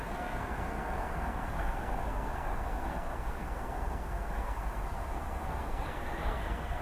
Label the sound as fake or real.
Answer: fake